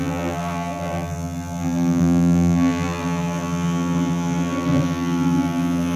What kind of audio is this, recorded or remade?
remade